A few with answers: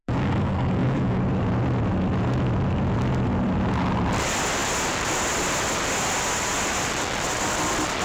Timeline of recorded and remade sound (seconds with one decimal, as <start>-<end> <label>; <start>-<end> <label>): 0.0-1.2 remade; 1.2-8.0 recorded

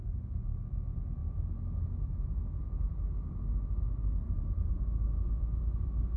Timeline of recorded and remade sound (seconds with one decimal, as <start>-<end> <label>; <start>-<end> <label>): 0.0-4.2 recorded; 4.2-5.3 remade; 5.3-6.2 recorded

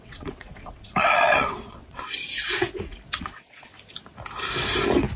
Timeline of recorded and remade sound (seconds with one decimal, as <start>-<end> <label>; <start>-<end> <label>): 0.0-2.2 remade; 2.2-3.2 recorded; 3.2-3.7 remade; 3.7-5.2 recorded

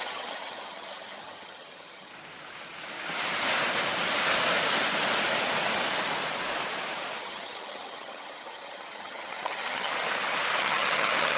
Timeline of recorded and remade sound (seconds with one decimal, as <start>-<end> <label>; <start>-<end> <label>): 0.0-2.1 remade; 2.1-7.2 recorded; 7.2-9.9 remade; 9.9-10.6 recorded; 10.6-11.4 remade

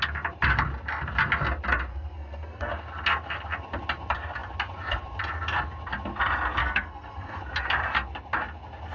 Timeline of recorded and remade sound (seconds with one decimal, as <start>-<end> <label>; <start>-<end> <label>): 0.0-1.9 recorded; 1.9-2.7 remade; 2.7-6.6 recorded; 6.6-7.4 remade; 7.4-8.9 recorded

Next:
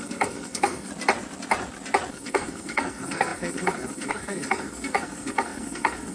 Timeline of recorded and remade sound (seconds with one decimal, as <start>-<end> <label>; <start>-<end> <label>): 0.0-0.9 remade; 0.9-2.1 recorded; 2.1-6.1 remade

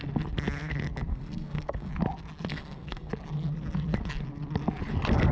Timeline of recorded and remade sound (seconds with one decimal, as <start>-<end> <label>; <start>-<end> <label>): 0.0-1.1 recorded; 1.1-1.9 remade; 1.9-2.5 recorded; 2.5-3.1 remade; 3.1-5.3 recorded